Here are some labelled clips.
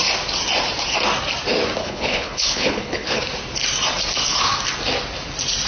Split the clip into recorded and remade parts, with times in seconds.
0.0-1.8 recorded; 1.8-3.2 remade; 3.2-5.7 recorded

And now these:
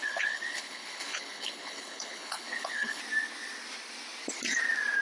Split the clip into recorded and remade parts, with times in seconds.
0.0-3.0 remade; 3.0-5.0 recorded

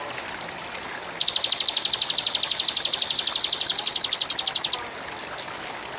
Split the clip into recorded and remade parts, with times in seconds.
0.0-6.0 recorded

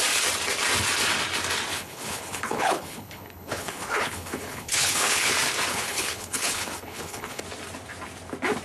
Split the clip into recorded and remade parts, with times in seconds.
0.0-1.7 recorded; 1.7-5.3 remade; 5.3-5.7 recorded; 5.7-7.4 remade; 7.4-8.6 recorded

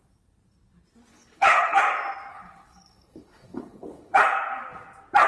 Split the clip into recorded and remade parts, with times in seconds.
0.0-1.1 recorded; 1.1-1.8 remade; 1.8-2.3 recorded; 2.3-4.2 remade; 4.2-5.3 recorded